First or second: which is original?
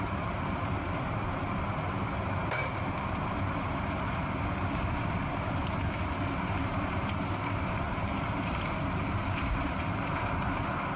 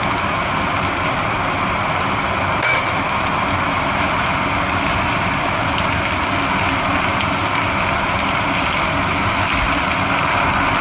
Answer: second